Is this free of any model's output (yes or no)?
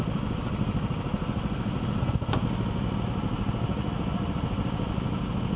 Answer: yes